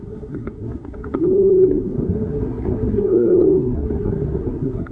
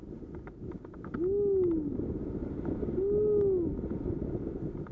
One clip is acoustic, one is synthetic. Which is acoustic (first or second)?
second